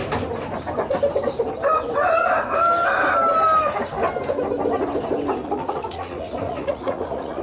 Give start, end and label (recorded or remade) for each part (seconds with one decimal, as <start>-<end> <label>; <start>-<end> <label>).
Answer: 0.0-5.4 recorded; 5.4-7.4 remade